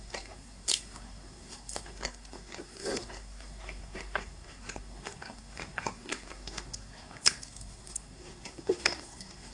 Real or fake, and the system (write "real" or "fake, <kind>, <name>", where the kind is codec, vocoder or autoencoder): fake, codec, SNAC